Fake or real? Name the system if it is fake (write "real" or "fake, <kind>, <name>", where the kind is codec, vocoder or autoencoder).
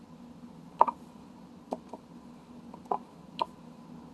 real